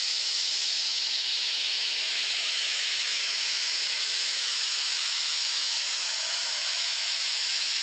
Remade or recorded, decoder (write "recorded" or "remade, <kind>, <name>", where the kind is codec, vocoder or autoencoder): remade, autoencoder, DAC-VAE